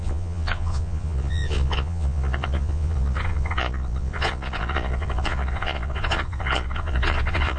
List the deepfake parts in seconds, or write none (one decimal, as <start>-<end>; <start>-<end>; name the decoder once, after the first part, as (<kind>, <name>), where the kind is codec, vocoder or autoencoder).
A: 0.0-7.6 (vocoder, Vocos)